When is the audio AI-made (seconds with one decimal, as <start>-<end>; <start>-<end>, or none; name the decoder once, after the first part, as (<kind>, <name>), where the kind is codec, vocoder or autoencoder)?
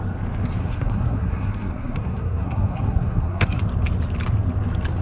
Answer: 0.6-3.6 (codec, SNAC)